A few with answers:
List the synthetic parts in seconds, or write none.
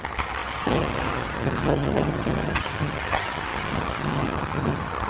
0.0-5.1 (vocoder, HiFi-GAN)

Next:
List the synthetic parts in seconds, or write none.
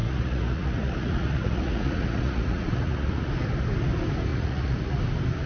0.0-3.3 (vocoder, Vocos); 4.3-5.0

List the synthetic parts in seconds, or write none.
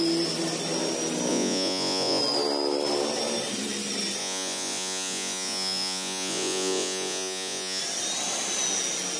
1.3-2.2 (vocoder, Vocos); 4.2-7.8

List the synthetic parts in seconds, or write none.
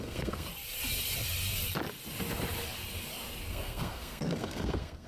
0.0-0.5 (codec, SNAC); 3.5-5.1